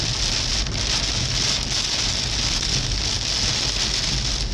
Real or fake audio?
real